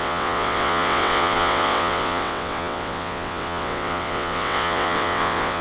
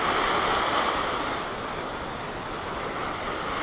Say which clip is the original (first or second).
second